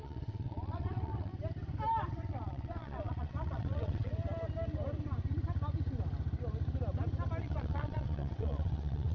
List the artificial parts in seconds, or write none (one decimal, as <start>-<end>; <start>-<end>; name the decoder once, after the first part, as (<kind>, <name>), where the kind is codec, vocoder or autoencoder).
0.0-1.3 (vocoder, WaveNeXt); 2.1-4.1; 7.4-9.1